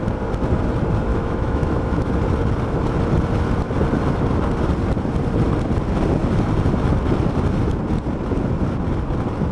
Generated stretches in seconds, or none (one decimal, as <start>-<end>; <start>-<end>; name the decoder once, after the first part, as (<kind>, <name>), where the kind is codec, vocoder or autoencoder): 1.1-2.1 (autoencoder, DAC-VAE)